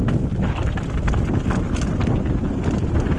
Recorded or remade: recorded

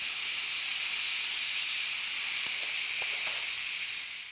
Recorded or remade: recorded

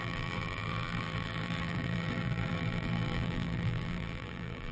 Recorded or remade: remade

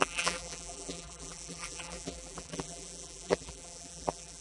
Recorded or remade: remade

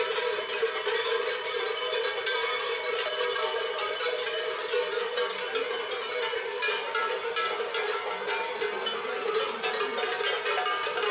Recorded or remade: remade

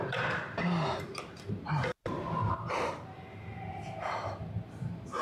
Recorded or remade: remade